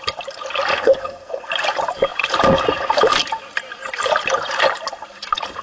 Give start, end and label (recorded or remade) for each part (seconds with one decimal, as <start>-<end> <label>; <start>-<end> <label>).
0.0-0.7 recorded; 0.7-1.5 remade; 1.5-5.6 recorded